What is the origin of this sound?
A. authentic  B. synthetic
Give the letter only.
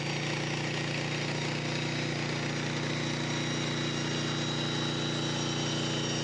A